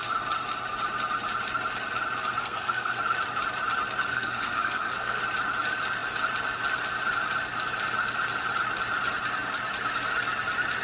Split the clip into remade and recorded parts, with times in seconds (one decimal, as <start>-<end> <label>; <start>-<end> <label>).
0.0-2.4 recorded; 2.4-3.0 remade; 3.0-4.1 recorded; 4.1-5.2 remade; 5.2-10.8 recorded